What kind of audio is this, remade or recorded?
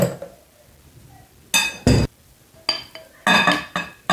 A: recorded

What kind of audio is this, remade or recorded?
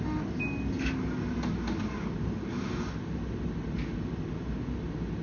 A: recorded